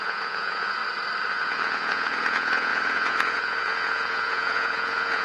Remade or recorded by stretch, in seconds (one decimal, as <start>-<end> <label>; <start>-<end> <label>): 0.0-0.8 remade; 0.8-1.3 recorded; 1.3-5.2 remade